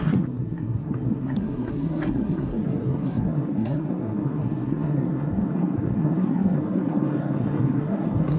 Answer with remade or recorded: remade